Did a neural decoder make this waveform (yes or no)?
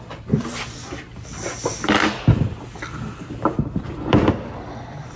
yes